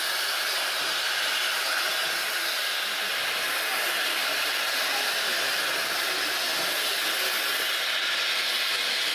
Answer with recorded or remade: recorded